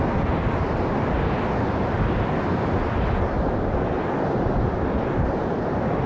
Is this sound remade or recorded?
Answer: recorded